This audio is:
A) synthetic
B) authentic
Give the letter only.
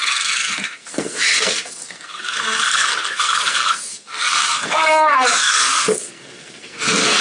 A